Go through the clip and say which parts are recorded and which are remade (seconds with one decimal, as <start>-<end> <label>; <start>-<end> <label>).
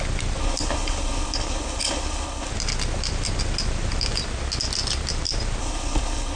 0.0-0.4 recorded; 0.4-2.5 remade; 2.5-5.6 recorded; 5.6-6.4 remade